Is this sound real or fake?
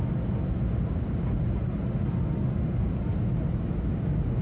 real